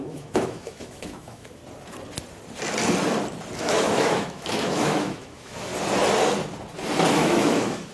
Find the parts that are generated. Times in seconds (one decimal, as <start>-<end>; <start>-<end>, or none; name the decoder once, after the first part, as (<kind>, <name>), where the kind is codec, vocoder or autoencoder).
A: 0.0-1.6 (autoencoder, DAC-VAE); 3.6-5.7; 7.1-7.9